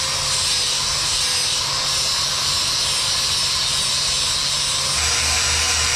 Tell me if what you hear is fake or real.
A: real